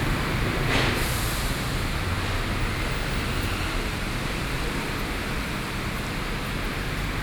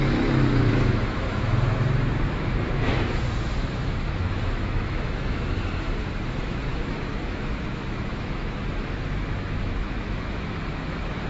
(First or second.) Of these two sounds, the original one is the first